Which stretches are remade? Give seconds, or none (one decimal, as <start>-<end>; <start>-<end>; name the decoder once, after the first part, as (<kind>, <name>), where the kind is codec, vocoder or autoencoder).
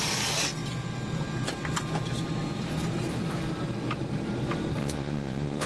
4.8-5.7 (vocoder, Vocos)